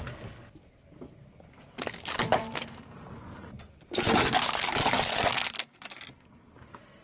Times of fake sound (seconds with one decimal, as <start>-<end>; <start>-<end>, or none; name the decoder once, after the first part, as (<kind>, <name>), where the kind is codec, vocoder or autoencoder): none